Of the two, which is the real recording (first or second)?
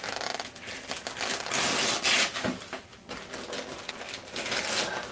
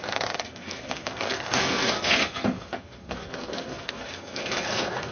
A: first